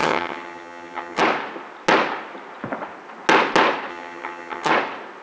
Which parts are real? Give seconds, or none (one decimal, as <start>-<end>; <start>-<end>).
1.2-3.9; 4.7-5.2